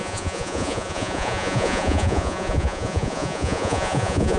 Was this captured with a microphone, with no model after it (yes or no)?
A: no